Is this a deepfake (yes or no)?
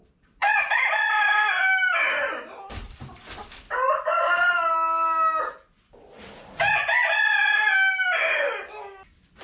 no